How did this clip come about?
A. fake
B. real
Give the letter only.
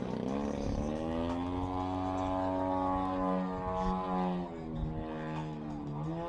B